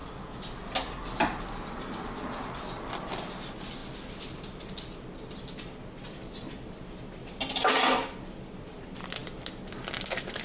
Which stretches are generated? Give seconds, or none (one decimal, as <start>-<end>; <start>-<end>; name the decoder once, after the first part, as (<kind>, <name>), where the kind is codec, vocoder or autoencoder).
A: none